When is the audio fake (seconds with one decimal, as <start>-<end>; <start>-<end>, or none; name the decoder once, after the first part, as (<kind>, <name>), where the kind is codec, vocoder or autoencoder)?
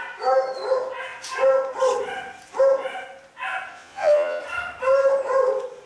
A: 3.7-4.4 (vocoder, Vocos)